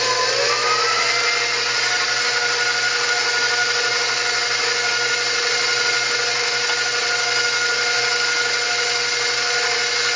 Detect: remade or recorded recorded